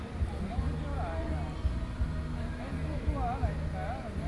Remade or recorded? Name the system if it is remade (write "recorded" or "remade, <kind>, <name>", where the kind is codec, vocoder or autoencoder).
recorded